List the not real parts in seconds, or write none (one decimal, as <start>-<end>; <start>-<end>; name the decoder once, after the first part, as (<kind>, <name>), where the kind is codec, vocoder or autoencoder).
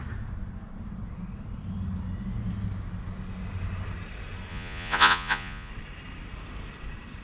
4.5-5.7 (vocoder, Vocos)